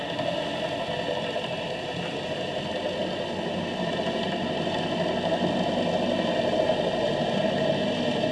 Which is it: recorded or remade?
recorded